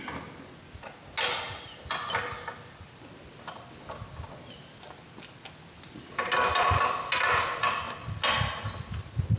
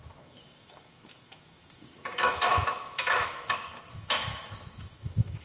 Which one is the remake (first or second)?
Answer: second